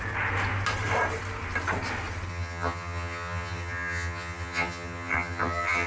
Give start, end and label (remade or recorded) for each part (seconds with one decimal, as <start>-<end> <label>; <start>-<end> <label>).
0.0-2.3 recorded; 2.3-5.9 remade